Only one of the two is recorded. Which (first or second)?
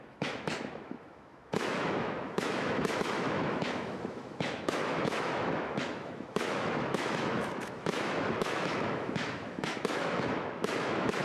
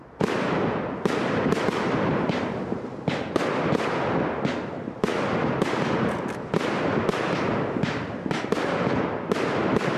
second